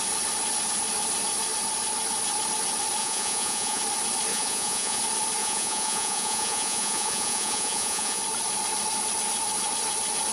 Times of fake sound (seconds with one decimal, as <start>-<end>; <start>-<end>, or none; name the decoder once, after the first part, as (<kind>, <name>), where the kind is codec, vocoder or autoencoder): 3.0-3.8 (vocoder, Vocos); 4.3-5.0; 5.4-8.2